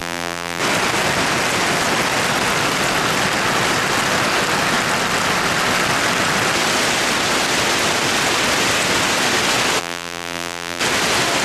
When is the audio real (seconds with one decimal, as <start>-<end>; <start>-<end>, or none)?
0.6-9.8; 10.8-11.4